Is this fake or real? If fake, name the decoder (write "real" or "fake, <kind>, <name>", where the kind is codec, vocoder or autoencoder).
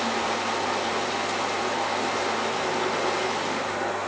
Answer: real